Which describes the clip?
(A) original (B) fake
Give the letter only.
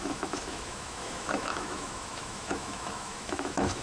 B